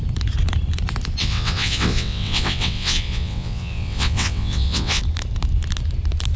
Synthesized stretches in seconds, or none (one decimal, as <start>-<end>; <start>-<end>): 1.2-5.0